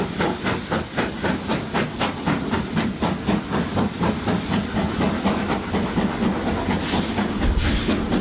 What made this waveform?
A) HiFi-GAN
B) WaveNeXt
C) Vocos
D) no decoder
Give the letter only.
D